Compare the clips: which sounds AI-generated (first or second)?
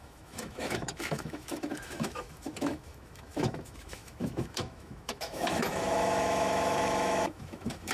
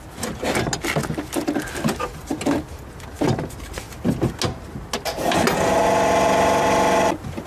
first